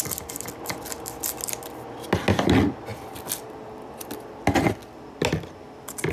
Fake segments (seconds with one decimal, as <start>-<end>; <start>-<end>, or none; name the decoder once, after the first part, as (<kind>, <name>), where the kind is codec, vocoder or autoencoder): none